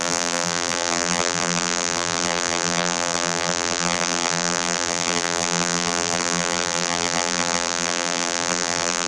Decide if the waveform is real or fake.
fake